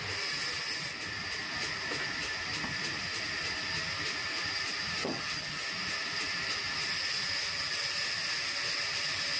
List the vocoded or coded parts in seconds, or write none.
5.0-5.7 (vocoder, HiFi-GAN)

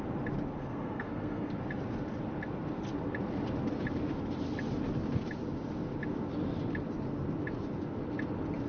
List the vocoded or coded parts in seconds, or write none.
0.6-1.5 (codec, SNAC)